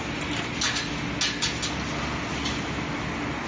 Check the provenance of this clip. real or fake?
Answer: real